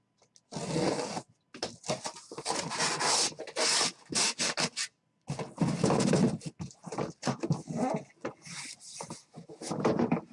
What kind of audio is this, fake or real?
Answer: real